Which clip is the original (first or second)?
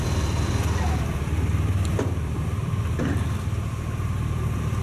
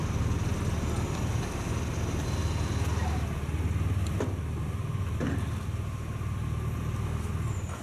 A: second